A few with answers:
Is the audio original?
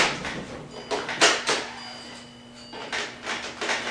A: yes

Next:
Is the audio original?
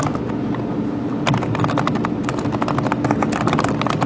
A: yes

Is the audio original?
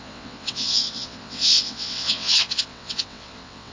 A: no